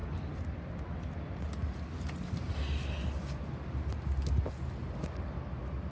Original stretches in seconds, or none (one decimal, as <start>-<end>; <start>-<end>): 0.0-5.9